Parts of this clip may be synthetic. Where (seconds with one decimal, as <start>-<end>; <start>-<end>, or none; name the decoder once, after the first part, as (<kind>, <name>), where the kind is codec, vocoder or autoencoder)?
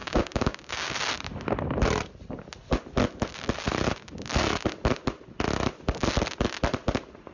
0.0-0.9 (codec, DAC)